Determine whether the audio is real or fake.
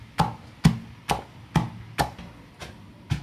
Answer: real